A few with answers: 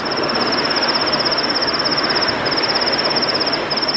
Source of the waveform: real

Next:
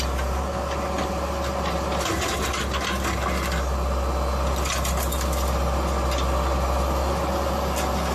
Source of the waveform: real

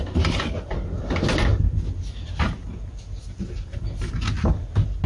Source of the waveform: real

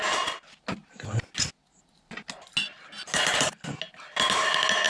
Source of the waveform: real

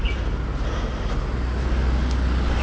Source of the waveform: real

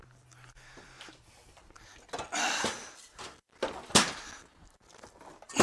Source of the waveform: real